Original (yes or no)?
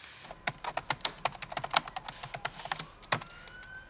yes